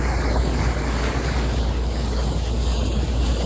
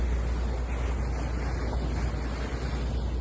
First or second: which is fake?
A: first